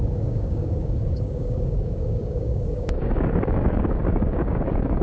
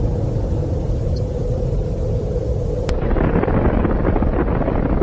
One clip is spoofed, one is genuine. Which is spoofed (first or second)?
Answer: first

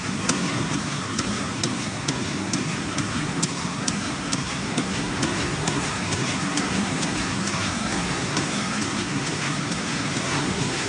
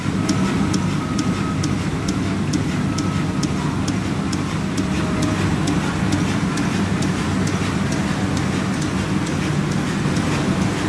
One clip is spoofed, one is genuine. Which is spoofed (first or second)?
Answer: first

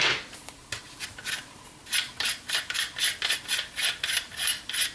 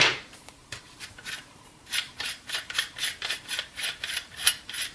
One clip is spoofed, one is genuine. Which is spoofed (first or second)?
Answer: second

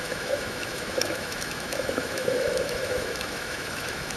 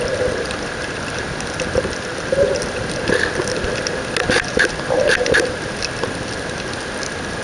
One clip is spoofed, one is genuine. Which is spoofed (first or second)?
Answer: first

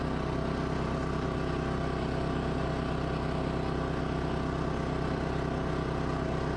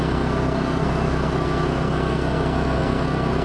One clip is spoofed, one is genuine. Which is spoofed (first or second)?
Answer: second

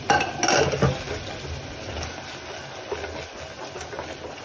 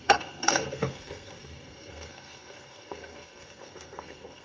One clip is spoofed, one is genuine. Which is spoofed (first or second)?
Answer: second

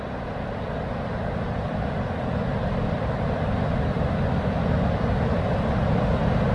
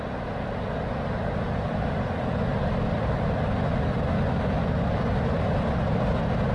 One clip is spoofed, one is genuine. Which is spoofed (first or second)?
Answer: first